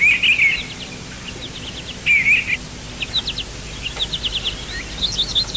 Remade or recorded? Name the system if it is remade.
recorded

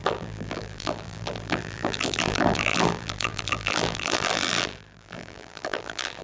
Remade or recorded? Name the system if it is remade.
remade, vocoder, BigVGAN v2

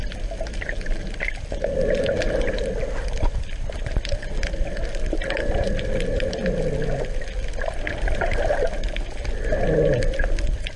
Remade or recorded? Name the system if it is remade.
recorded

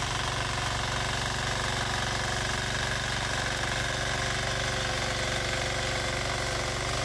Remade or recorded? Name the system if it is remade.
recorded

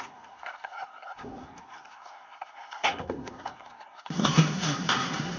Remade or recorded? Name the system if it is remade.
remade, codec, SNAC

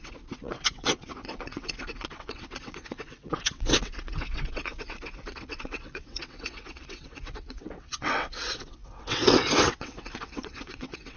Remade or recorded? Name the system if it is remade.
remade, vocoder, WaveNeXt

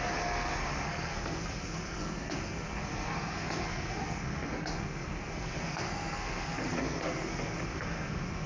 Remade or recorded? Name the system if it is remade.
remade, codec, SNAC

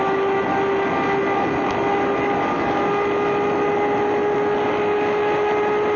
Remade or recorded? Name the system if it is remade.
recorded